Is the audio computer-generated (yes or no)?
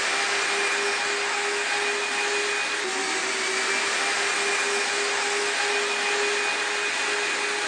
no